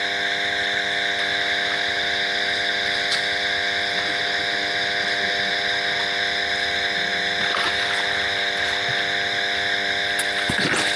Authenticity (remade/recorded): recorded